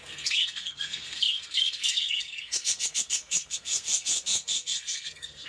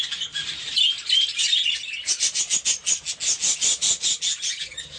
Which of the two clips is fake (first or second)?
first